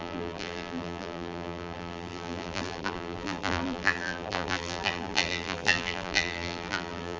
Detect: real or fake fake